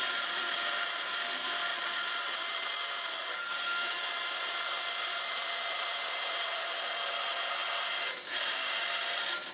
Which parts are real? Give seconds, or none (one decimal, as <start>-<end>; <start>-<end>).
0.0-1.7; 2.3-9.5